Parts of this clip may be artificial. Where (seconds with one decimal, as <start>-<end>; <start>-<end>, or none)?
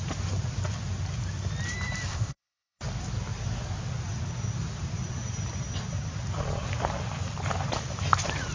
2.1-2.8